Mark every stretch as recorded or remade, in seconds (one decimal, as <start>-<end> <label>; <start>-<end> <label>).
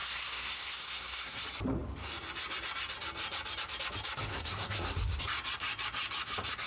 0.0-1.4 remade; 1.4-4.3 recorded; 4.3-5.2 remade; 5.2-6.7 recorded